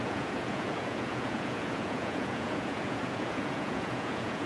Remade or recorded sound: remade